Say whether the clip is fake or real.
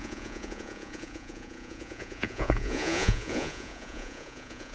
fake